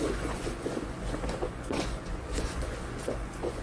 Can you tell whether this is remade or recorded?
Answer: remade